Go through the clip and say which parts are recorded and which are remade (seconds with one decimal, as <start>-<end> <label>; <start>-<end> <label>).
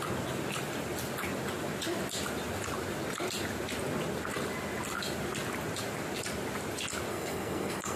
0.0-7.1 recorded; 7.1-8.0 remade